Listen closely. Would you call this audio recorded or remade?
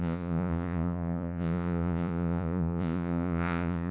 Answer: remade